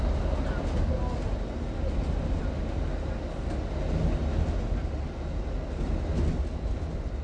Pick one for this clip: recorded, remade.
recorded